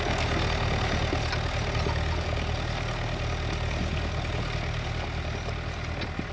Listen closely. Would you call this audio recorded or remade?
recorded